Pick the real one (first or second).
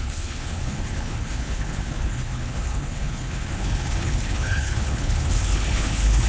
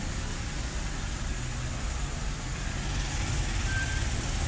second